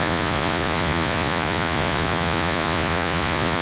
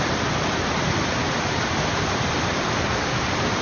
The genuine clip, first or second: second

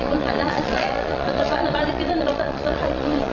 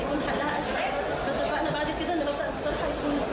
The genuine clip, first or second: second